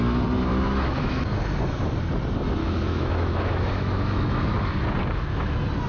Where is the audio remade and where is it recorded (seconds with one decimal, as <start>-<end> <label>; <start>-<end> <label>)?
0.0-0.5 recorded; 0.5-1.2 remade; 1.2-2.6 recorded; 2.6-4.4 remade; 4.4-5.9 recorded